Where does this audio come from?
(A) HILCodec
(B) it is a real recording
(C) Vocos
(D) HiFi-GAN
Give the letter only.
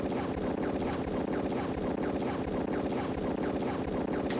B